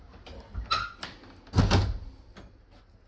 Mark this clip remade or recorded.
recorded